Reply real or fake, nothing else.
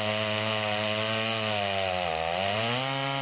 real